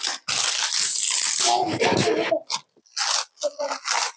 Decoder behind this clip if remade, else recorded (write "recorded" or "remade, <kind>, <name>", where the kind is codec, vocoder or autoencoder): recorded